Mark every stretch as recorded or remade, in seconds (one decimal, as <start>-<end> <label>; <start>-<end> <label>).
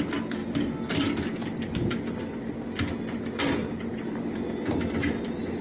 0.0-5.6 recorded